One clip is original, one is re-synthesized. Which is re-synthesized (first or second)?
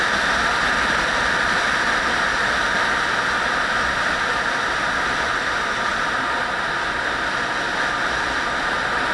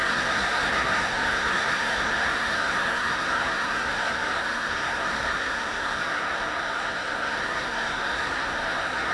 second